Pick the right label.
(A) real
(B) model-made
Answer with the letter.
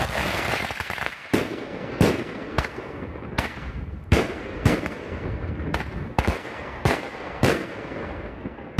B